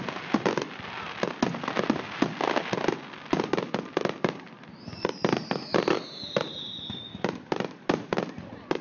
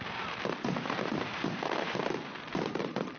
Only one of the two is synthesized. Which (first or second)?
second